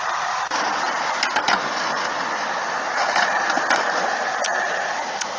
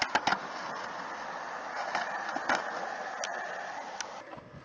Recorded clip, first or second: second